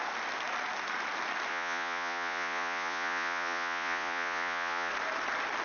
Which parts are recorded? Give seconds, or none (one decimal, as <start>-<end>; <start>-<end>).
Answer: 0.0-1.5; 4.9-5.6